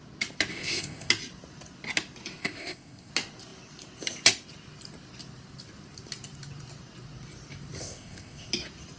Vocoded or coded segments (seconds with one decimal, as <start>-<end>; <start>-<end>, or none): 0.5-1.1; 2.4-3.1; 7.8-8.5